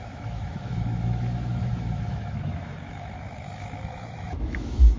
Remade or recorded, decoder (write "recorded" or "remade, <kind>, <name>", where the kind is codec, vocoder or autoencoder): remade, autoencoder, DAC-VAE